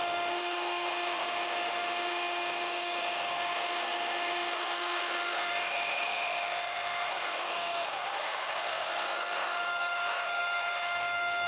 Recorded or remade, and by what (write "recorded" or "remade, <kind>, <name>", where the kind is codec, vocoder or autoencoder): remade, autoencoder, DAC-VAE